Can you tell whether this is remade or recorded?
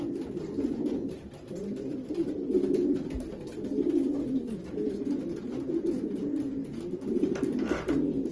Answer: recorded